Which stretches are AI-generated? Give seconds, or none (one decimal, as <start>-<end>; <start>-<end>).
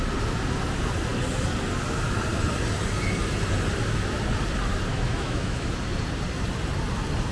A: 4.9-5.7